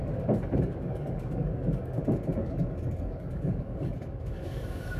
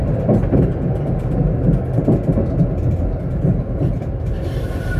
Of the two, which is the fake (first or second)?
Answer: first